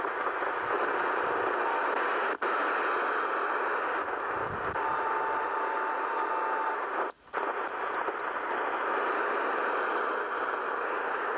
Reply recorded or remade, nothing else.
recorded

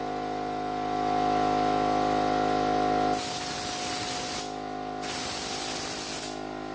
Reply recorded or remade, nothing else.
recorded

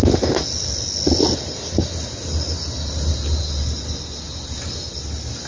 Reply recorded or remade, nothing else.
recorded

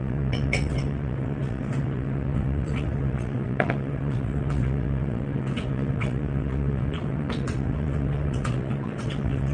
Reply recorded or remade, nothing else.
remade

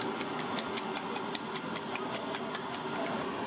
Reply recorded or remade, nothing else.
recorded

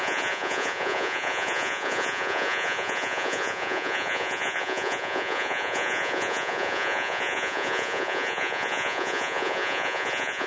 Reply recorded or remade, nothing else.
remade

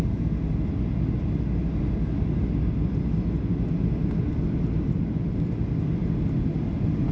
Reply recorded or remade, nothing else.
recorded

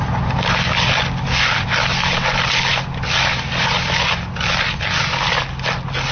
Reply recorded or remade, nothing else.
recorded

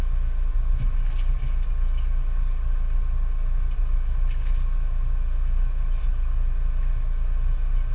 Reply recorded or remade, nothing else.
recorded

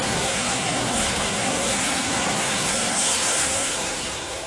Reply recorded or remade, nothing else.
remade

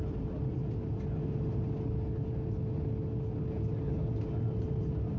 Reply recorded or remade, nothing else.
recorded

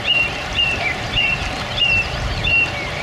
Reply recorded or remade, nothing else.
remade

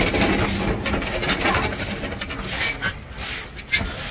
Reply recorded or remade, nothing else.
recorded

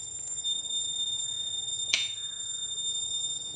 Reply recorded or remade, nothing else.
remade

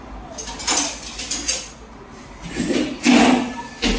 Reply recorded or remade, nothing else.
recorded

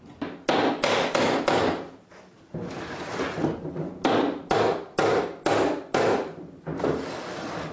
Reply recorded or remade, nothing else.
recorded